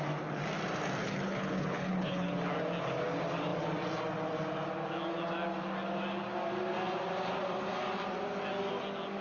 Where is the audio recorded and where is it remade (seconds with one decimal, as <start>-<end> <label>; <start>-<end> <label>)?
0.0-1.0 recorded; 1.0-2.4 remade; 2.4-9.2 recorded